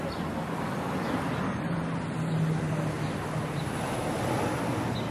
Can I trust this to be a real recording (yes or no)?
yes